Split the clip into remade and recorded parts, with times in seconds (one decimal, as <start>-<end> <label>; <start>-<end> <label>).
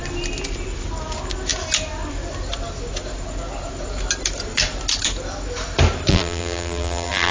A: 0.0-6.1 recorded; 6.1-7.3 remade